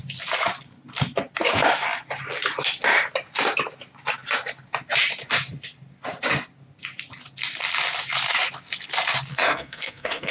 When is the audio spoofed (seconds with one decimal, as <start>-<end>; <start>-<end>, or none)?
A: 9.3-10.3